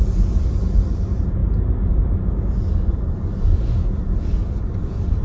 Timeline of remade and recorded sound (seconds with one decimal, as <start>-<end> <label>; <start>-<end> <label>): 0.0-1.4 remade; 1.4-4.0 recorded; 4.0-5.2 remade